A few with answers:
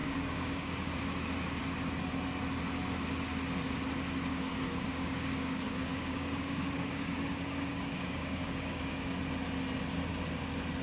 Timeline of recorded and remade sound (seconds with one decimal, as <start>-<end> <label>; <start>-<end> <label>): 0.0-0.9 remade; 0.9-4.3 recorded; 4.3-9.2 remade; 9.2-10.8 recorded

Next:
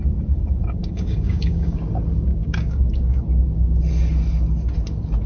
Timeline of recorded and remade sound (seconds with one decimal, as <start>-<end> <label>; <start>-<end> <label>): 0.0-0.8 recorded; 0.8-1.8 remade; 1.8-2.3 recorded; 2.3-3.2 remade; 3.2-5.3 recorded

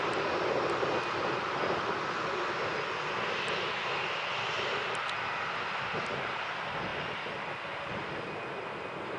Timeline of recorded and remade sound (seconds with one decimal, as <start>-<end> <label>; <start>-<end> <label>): 0.0-9.2 recorded